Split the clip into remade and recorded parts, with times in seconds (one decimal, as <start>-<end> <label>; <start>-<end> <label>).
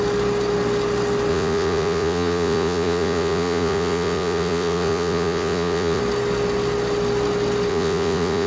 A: 0.0-1.3 recorded; 1.3-6.0 remade; 6.0-7.7 recorded; 7.7-8.5 remade